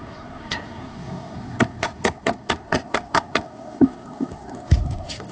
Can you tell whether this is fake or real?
fake